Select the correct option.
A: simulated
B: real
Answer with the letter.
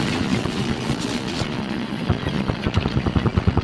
A